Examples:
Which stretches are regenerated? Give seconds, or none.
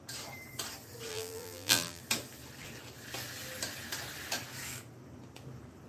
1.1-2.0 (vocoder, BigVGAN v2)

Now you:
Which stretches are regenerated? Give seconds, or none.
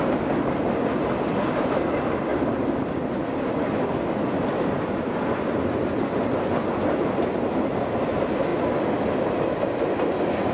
2.3-4.4 (vocoder, BigVGAN v2)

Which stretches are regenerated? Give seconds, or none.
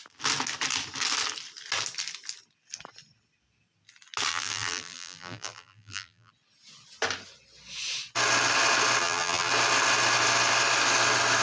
4.3-6.3 (vocoder, BigVGAN v2); 9.0-9.5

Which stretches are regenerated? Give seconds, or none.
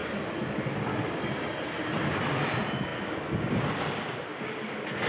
0.8-2.9 (vocoder, BigVGAN v2); 3.7-4.3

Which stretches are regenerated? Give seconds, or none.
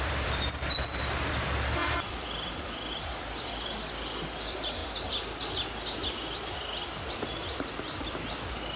0.0-4.8 (vocoder, BigVGAN v2); 7.1-8.8